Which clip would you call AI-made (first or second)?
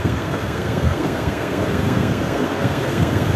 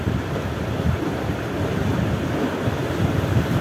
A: first